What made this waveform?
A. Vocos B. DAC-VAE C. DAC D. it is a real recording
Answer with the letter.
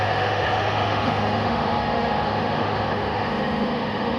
B